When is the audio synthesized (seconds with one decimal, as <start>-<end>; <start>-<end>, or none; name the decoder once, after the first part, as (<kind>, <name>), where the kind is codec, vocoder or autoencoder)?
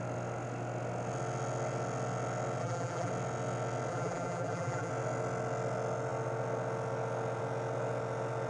2.6-3.1 (vocoder, BigVGAN v2); 3.9-4.9